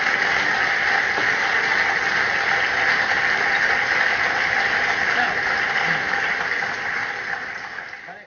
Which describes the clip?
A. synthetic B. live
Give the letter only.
B